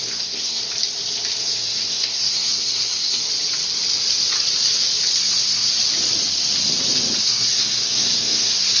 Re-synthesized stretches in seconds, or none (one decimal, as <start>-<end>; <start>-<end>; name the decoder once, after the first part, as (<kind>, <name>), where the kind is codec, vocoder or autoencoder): 0.0-0.6 (codec, SNAC); 1.4-3.2; 5.2-5.7; 7.2-8.8